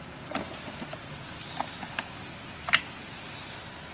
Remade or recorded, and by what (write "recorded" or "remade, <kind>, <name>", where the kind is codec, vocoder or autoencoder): recorded